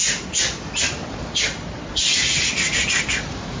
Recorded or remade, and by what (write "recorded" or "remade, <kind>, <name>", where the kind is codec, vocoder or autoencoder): recorded